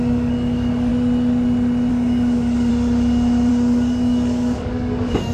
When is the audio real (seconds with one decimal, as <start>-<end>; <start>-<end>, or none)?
0.9-1.9; 2.7-3.5